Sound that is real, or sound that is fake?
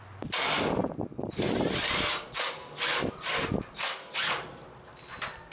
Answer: real